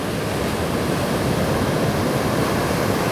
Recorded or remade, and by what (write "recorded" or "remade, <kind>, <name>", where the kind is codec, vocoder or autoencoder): remade, vocoder, BigVGAN v2